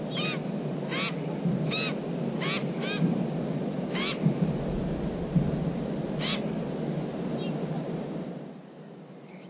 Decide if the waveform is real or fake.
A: real